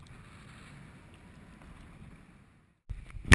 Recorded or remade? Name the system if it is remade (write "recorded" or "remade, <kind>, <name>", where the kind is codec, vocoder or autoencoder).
recorded